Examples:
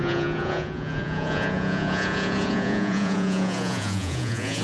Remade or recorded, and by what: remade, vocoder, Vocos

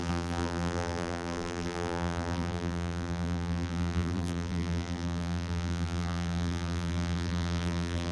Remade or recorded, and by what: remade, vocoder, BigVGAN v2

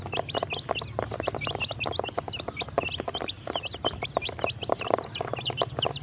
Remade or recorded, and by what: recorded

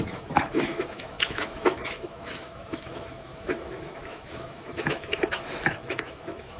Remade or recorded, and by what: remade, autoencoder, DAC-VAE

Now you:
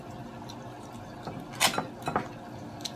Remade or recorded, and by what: recorded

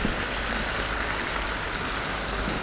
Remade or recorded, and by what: recorded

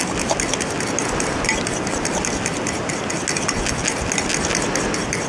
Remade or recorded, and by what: recorded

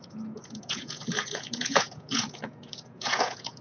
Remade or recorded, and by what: remade, vocoder, Vocos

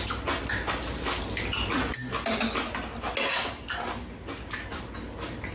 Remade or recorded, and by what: recorded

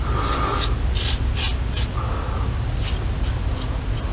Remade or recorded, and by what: recorded